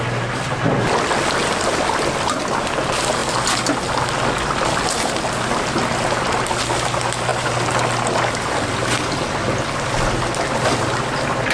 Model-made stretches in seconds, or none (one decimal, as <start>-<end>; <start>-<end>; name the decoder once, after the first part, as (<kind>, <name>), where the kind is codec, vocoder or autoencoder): none